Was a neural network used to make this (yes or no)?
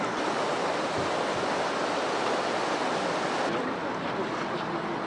no